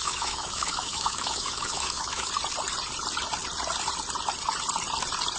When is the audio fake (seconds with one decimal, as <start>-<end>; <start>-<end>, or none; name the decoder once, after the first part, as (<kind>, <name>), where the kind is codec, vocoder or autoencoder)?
0.0-2.3 (autoencoder, DAC-VAE)